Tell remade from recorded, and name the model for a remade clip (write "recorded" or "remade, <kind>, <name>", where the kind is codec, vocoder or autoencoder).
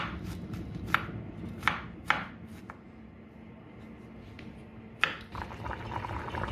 recorded